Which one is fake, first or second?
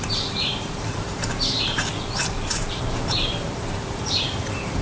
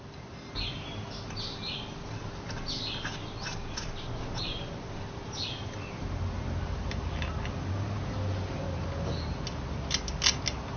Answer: first